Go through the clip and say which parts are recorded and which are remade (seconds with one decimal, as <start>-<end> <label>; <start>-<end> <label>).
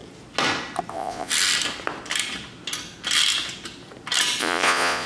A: 0.0-0.9 recorded; 0.9-1.3 remade; 1.3-4.4 recorded; 4.4-5.1 remade